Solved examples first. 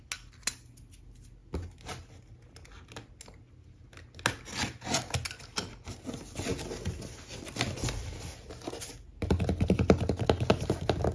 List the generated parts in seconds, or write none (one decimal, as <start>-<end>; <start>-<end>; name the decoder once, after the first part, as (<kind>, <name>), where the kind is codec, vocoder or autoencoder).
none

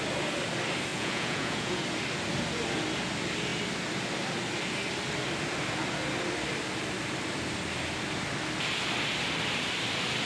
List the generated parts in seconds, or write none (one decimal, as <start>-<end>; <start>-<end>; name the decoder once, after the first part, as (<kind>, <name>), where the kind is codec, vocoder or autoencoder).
0.9-1.8 (vocoder, Vocos)

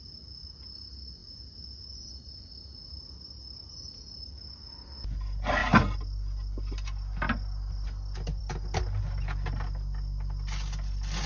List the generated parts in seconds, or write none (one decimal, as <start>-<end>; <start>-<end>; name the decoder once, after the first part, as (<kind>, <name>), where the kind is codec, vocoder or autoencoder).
none

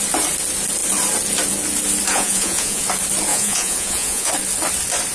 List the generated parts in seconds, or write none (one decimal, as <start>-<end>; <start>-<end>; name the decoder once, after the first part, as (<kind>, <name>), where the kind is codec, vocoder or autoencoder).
2.1-2.8 (vocoder, Vocos); 3.3-4.3

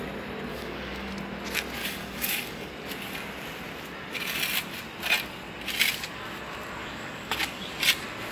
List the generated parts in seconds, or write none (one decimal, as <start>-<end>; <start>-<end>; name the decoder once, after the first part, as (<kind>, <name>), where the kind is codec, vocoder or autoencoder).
0.5-1.1 (codec, DAC); 1.8-2.7; 6.8-7.7

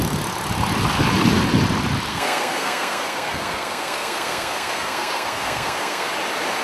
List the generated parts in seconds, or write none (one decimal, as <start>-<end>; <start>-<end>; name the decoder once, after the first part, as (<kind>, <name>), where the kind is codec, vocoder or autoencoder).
2.1-6.1 (codec, SNAC)